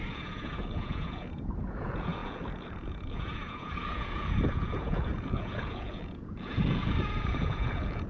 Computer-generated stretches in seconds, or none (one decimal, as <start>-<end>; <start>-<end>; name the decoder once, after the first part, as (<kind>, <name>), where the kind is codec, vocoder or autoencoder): 0.0-8.1 (vocoder, Vocos)